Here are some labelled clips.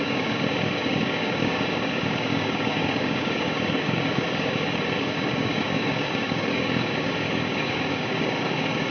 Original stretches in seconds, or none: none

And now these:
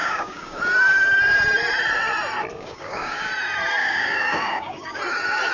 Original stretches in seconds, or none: 0.6-2.5; 3.3-3.8; 5.0-5.5

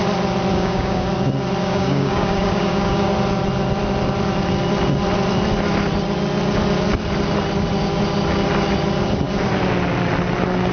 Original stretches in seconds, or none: 0.0-0.5; 1.1-1.6; 3.1-10.7

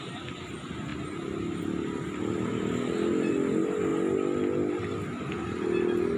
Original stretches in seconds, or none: 0.0-6.2

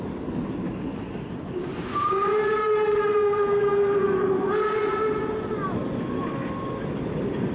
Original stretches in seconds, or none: 0.0-2.4; 4.3-7.5

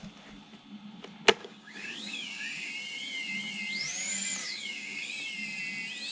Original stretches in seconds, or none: 0.0-1.4; 2.7-4.4; 5.1-6.1